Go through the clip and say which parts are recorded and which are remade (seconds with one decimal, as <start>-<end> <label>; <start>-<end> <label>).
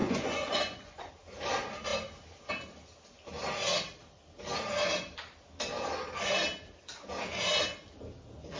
0.0-1.1 remade; 1.1-8.6 recorded